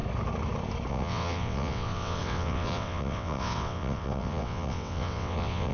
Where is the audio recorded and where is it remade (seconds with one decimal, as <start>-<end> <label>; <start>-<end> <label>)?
0.0-0.9 recorded; 0.9-5.7 remade